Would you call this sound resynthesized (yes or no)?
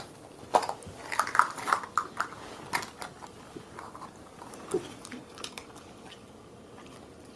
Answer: no